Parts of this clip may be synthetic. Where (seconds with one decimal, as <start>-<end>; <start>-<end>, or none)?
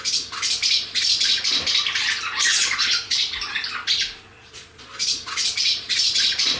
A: 2.5-3.4; 4.3-6.6